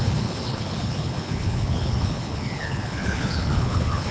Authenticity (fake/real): fake